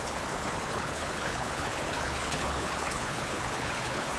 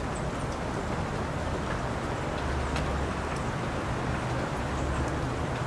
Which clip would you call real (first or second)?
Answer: second